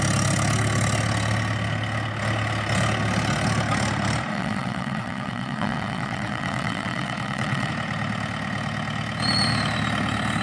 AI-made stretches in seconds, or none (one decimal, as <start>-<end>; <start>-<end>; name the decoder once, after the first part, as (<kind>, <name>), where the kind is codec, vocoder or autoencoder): 4.3-7.7 (vocoder, WaveNeXt)